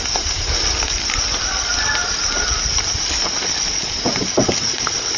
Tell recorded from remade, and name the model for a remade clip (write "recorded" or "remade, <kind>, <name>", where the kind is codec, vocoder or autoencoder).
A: recorded